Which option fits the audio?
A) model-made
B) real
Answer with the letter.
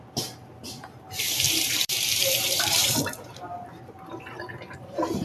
A